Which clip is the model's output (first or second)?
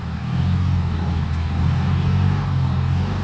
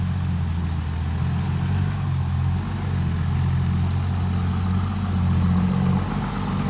first